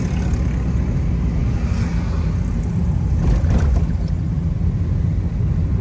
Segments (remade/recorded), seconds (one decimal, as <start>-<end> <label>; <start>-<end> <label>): 0.0-5.8 recorded